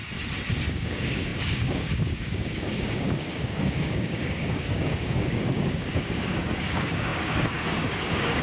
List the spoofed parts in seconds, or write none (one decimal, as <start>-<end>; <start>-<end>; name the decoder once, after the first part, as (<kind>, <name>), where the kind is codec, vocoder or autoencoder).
0.7-8.4 (codec, DAC)

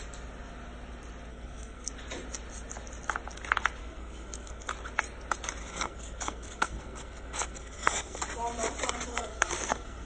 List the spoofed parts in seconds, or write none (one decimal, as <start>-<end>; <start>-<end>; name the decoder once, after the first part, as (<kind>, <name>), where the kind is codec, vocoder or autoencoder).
1.3-1.9 (codec, SNAC); 3.8-4.7; 5.6-8.2; 9.1-10.1

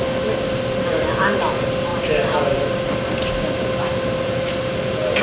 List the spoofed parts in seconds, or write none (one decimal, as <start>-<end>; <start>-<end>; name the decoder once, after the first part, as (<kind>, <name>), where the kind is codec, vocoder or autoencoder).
none

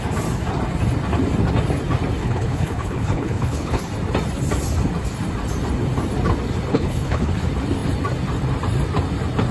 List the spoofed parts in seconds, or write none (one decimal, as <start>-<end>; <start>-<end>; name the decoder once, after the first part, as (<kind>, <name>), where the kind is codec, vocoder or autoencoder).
2.2-3.8 (codec, HILCodec); 6.7-7.3

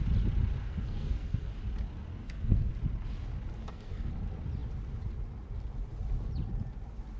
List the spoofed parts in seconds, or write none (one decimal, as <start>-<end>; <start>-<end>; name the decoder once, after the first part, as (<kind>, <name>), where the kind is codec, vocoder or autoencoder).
0.6-1.5 (codec, SNAC); 2.1-2.7; 3.6-4.1

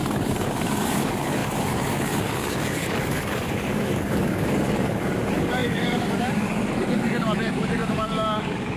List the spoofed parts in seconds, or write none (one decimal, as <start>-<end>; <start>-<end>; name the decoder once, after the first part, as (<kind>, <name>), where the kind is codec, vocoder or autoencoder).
0.0-8.8 (codec, DAC)